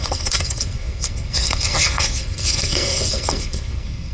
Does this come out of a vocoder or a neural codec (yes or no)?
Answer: yes